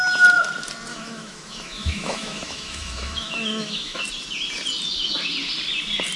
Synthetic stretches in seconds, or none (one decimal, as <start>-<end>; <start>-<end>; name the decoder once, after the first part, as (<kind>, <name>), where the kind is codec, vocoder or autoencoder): 0.9-4.0 (autoencoder, DAC-VAE)